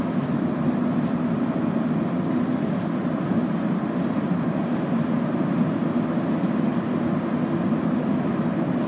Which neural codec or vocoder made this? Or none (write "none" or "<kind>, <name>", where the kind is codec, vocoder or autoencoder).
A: none